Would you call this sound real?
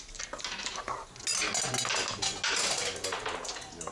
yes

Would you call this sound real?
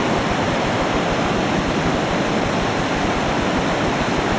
yes